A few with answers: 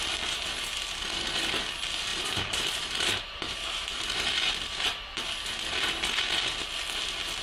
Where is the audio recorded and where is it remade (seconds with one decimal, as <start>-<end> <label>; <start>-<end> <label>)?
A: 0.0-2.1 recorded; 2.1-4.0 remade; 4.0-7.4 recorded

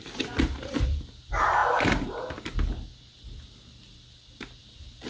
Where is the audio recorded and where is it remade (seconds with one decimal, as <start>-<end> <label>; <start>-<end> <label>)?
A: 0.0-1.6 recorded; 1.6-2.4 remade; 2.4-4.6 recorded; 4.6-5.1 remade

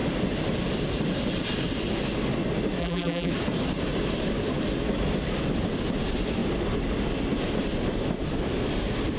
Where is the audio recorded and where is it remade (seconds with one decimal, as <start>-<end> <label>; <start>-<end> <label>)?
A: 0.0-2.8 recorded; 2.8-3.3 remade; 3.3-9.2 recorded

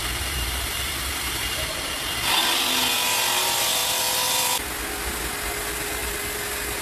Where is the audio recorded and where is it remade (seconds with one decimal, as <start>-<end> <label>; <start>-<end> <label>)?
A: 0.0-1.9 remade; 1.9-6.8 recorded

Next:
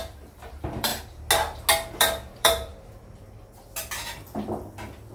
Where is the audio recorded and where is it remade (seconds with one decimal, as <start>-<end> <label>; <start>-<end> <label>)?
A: 0.0-0.9 remade; 0.9-2.0 recorded; 2.0-2.7 remade; 2.7-5.1 recorded

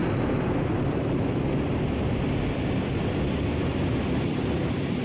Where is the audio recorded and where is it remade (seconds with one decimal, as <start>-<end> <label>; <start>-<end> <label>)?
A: 0.0-3.0 remade; 3.0-5.0 recorded

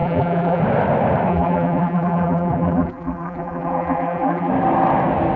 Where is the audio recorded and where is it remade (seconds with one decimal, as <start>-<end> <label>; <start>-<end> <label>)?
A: 0.0-0.6 remade; 0.6-1.3 recorded; 1.3-4.5 remade; 4.5-5.4 recorded

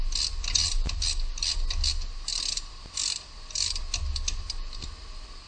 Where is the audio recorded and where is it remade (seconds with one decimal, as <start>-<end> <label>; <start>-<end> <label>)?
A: 0.0-2.3 recorded; 2.3-3.8 remade; 3.8-5.5 recorded